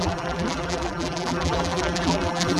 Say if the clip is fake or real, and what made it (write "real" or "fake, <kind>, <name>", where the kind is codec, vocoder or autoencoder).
fake, vocoder, BigVGAN v2